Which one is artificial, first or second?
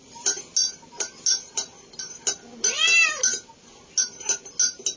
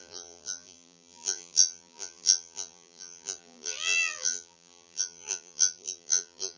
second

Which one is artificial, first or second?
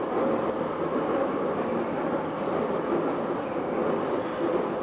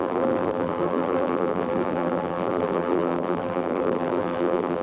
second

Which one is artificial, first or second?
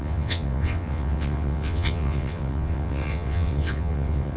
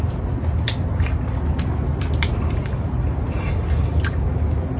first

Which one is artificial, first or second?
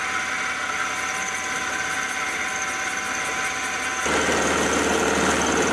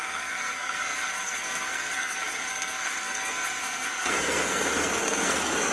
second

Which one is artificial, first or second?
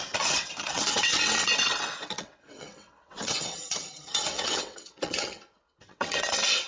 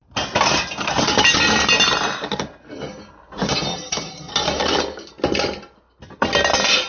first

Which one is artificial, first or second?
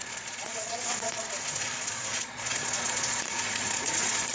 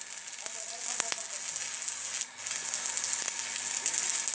first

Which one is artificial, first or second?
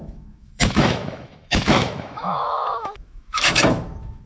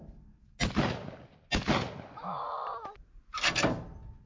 first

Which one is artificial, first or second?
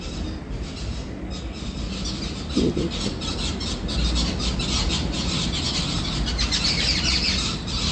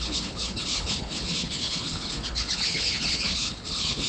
second